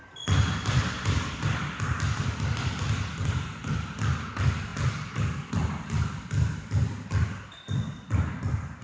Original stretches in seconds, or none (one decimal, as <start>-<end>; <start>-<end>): 0.0-8.8